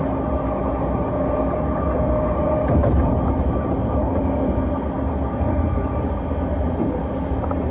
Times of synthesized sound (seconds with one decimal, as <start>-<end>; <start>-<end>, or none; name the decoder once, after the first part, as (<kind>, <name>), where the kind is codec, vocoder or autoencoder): none